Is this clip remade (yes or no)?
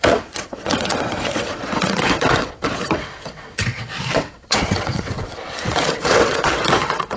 yes